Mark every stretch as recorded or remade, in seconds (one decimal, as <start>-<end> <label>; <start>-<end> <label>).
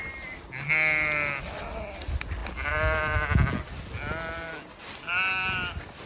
0.0-6.1 recorded